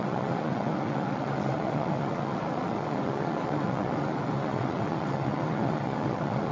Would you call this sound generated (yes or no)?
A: yes